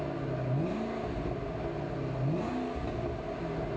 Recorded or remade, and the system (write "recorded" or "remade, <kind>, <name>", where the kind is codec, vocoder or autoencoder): recorded